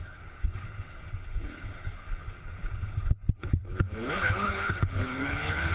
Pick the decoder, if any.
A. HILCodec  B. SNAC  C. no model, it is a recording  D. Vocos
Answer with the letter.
A